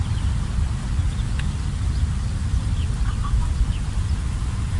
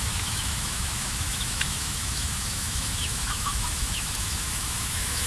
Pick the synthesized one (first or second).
second